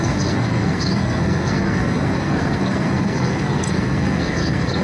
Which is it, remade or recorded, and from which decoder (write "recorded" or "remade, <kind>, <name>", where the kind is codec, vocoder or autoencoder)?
remade, codec, SNAC